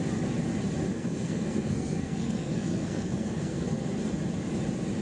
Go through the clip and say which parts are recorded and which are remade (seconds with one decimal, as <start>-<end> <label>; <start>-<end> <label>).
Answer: 0.0-0.9 recorded; 0.9-3.9 remade; 3.9-5.0 recorded